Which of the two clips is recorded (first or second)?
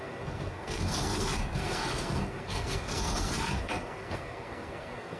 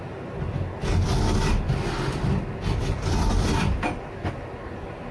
second